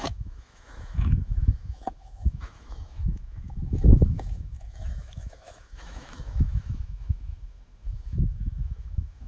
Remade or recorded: remade